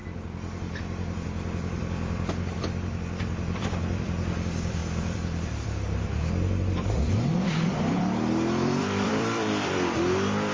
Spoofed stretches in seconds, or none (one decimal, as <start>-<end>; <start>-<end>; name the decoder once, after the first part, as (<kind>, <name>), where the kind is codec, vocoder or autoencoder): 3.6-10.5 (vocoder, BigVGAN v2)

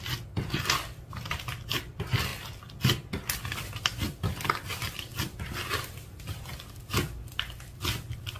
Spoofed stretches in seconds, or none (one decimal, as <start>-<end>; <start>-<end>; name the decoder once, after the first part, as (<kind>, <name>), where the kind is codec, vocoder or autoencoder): none

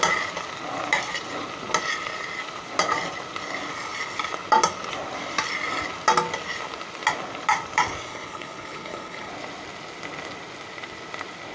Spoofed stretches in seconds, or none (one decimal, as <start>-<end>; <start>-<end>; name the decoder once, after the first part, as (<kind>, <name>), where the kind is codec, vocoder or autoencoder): 8.1-9.3 (codec, HILCodec)